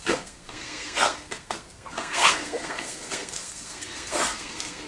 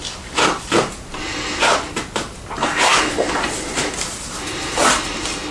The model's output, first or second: first